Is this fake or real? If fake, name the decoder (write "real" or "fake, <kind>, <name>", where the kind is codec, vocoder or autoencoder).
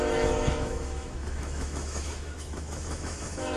fake, autoencoder, DAC-VAE